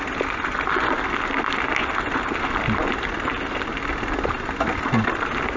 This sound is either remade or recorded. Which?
recorded